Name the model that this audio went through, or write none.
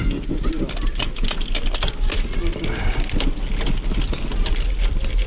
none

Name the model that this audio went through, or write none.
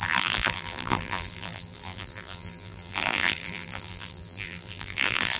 vocoder, BigVGAN v2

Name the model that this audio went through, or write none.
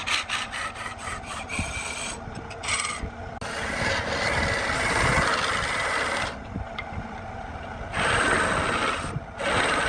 none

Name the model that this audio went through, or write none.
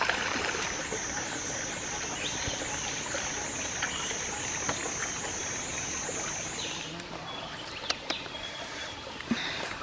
none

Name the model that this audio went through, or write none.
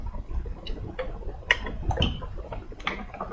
vocoder, BigVGAN v2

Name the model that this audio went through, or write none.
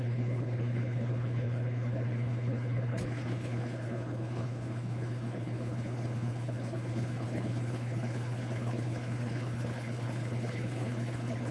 codec, HILCodec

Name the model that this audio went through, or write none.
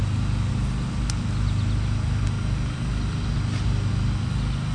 none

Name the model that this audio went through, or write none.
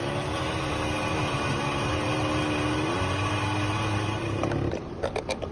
none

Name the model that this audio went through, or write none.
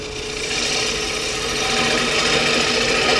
none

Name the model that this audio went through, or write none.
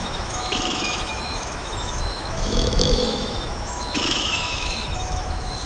autoencoder, DAC-VAE